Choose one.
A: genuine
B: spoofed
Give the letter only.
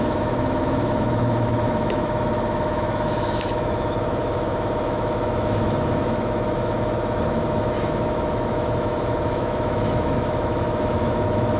B